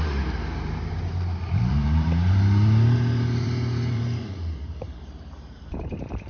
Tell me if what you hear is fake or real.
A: fake